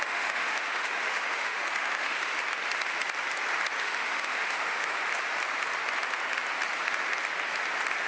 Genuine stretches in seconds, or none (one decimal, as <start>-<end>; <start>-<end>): 2.3-3.8; 5.0-8.1